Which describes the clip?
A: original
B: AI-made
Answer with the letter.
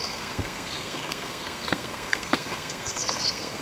B